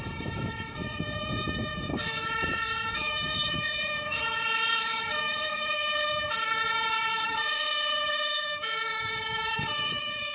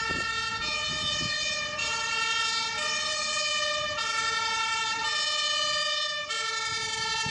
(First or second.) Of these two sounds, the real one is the second